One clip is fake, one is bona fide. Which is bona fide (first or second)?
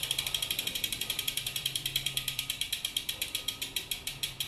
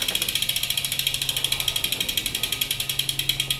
second